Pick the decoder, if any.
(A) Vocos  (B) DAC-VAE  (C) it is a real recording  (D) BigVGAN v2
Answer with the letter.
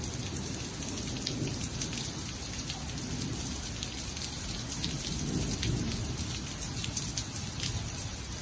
C